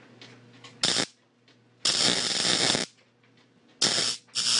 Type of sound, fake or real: real